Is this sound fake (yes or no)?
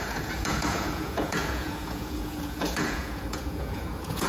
yes